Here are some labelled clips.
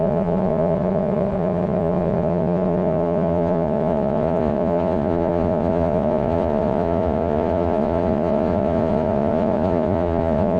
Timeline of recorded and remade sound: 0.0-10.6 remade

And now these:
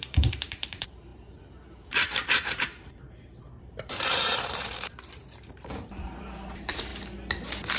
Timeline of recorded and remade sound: 0.0-6.9 remade; 6.9-7.8 recorded

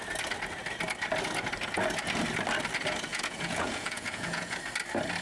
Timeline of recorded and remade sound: 0.0-3.1 recorded; 3.1-4.6 remade; 4.6-5.2 recorded

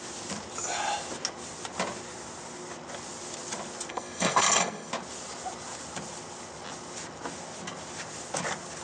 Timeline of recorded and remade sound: 0.0-3.9 recorded; 3.9-4.9 remade; 4.9-8.8 recorded

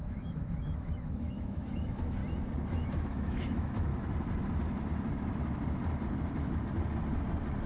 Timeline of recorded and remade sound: 0.0-2.2 remade; 2.2-2.7 recorded; 2.7-3.9 remade; 3.9-7.7 recorded

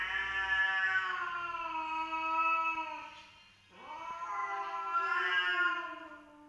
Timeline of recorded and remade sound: 0.0-6.5 recorded